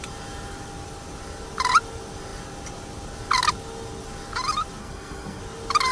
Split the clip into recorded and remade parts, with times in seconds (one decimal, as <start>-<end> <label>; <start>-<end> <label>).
0.0-4.8 recorded; 4.8-5.4 remade; 5.4-5.9 recorded